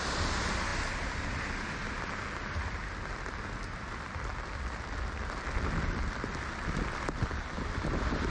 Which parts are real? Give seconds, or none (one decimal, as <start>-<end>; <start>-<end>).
0.0-8.3